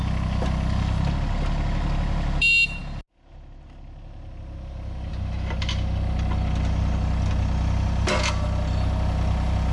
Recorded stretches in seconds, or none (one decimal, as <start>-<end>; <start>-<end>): 0.0-9.7